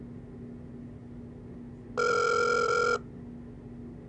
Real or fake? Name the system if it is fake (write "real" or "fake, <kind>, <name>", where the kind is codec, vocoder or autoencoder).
real